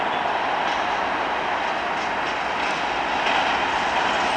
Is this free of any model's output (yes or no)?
yes